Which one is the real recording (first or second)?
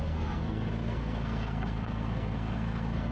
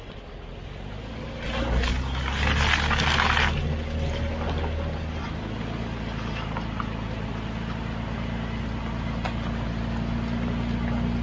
second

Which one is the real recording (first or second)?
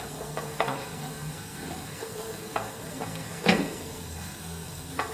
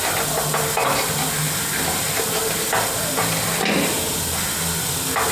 second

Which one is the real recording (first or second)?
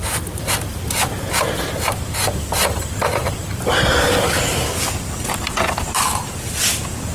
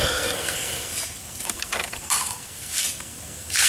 first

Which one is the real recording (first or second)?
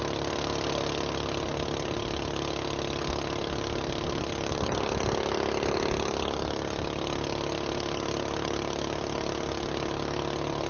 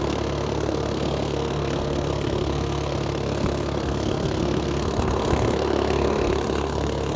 first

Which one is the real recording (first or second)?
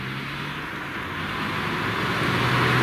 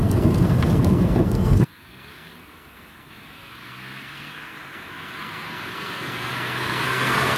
first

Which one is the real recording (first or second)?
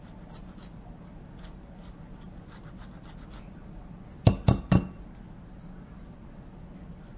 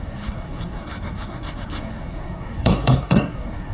first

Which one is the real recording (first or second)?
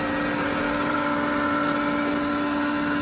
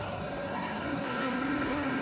first